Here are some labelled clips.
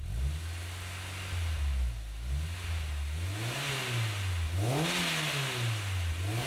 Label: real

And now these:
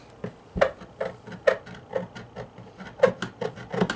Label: real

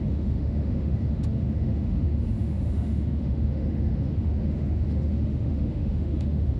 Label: fake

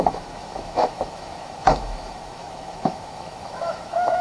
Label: fake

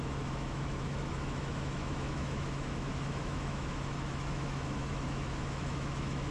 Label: fake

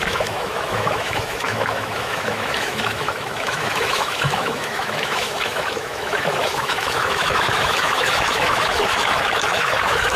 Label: fake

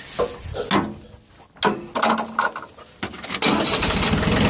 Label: real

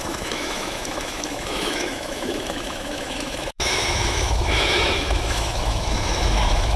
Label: fake